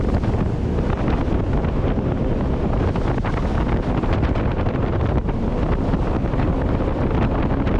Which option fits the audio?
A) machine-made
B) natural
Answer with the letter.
B